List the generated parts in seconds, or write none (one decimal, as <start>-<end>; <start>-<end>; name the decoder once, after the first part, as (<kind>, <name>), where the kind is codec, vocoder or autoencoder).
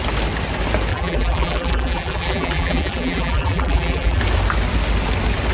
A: 0.9-4.2 (vocoder, BigVGAN v2)